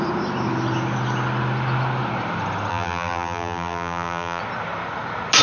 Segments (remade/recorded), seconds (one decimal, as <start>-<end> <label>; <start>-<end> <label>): 0.0-2.7 recorded; 2.7-4.4 remade; 4.4-5.4 recorded